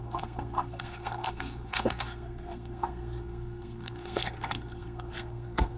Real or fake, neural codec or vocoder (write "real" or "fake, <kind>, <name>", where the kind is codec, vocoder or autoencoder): fake, codec, SNAC